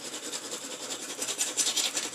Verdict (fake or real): fake